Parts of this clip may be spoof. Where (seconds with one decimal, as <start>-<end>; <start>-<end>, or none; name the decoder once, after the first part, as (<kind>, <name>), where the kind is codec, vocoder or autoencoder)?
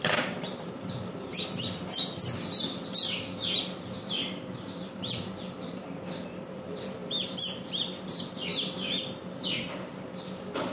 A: 0.0-1.3 (vocoder, BigVGAN v2); 2.8-10.7